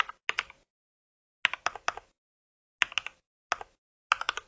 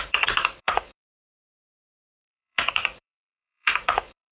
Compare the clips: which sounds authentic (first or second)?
first